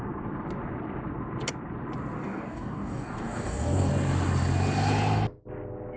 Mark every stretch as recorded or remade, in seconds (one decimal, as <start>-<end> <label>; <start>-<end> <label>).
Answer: 0.0-2.2 recorded; 2.2-3.9 remade; 3.9-6.0 recorded